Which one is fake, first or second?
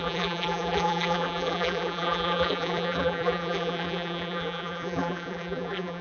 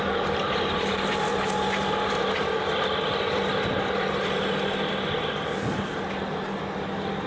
first